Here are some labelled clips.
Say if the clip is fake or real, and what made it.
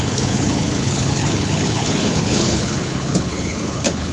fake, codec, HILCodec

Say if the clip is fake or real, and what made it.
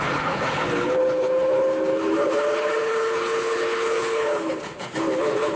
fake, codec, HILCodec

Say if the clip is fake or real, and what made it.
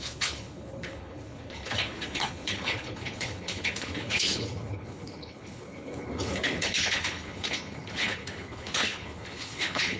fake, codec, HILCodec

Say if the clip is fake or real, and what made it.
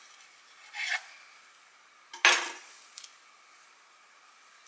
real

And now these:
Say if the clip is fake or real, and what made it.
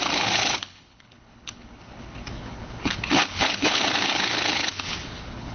fake, codec, HILCodec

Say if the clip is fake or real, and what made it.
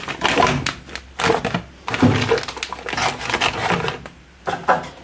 real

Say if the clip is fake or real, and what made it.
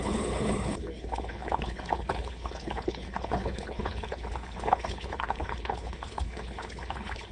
fake, codec, HILCodec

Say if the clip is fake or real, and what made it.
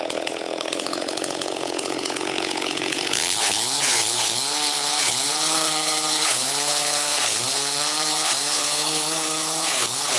fake, codec, HILCodec